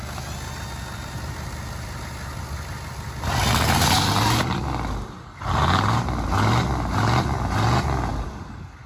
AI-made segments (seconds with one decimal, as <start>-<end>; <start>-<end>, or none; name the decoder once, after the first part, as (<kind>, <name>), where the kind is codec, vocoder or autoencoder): none